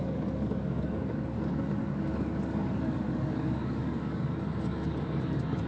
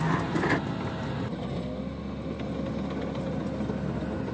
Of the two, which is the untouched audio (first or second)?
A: second